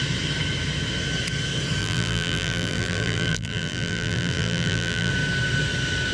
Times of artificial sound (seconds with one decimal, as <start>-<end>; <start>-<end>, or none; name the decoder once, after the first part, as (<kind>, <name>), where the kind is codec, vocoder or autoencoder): 1.8-5.1 (vocoder, BigVGAN v2)